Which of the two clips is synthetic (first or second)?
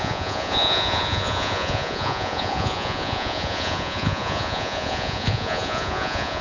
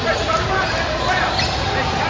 first